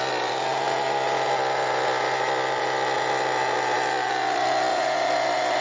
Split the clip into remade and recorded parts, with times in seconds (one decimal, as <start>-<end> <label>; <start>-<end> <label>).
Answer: 0.0-4.7 recorded; 4.7-5.6 remade